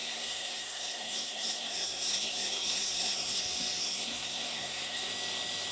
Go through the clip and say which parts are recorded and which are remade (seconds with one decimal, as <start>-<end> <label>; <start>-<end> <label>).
0.0-3.4 remade; 3.4-3.8 recorded; 3.8-5.1 remade; 5.1-5.7 recorded

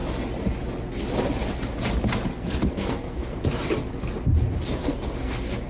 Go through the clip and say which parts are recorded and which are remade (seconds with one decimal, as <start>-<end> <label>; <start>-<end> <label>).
0.0-2.3 recorded; 2.3-3.4 remade; 3.4-4.8 recorded; 4.8-5.7 remade

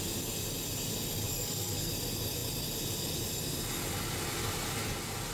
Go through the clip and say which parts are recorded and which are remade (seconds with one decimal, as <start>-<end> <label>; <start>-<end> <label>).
0.0-1.3 recorded; 1.3-1.9 remade; 1.9-5.3 recorded

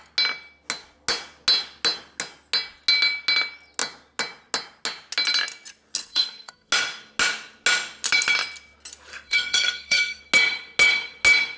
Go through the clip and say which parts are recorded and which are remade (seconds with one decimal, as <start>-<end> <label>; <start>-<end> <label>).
0.0-6.0 recorded; 6.0-6.7 remade; 6.7-9.1 recorded; 9.1-10.2 remade; 10.2-11.6 recorded

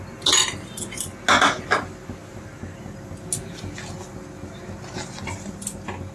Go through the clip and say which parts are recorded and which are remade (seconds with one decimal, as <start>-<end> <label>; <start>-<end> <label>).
0.0-6.1 recorded

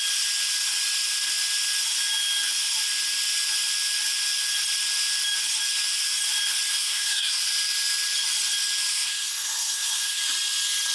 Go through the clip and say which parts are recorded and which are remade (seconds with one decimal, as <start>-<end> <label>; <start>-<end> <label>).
0.0-6.7 recorded; 6.7-7.4 remade; 7.4-8.9 recorded; 8.9-10.2 remade; 10.2-10.9 recorded